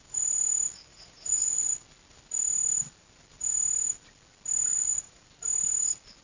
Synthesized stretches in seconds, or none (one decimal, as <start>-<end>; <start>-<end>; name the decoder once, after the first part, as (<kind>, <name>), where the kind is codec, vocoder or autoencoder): 0.9-1.7 (vocoder, Vocos); 4.7-5.2